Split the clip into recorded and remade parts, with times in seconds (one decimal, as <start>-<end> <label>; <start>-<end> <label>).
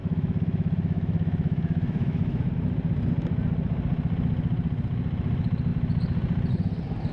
0.0-2.5 remade; 2.5-7.1 recorded